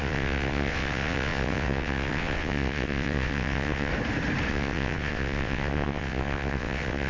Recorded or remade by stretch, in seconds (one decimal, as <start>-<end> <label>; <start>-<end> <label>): 0.0-3.9 remade; 3.9-4.5 recorded; 4.5-7.1 remade